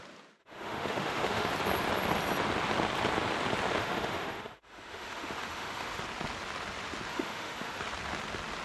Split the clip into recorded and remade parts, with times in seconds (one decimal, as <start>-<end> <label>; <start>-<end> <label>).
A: 0.0-0.4 recorded; 0.4-1.5 remade; 1.5-3.8 recorded; 3.8-6.0 remade; 6.0-7.1 recorded; 7.1-7.8 remade; 7.8-8.6 recorded